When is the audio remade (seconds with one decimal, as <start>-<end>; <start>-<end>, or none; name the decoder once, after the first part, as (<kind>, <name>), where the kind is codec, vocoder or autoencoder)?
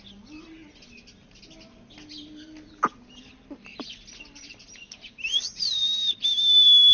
none